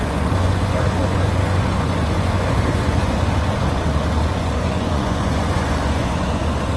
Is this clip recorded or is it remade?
remade